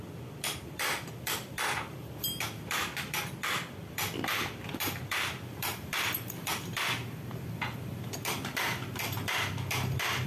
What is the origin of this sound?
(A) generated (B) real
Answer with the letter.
A